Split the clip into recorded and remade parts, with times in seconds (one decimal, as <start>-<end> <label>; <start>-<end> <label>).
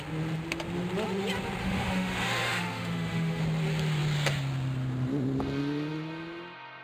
0.0-1.6 recorded; 1.6-3.4 remade; 3.4-6.8 recorded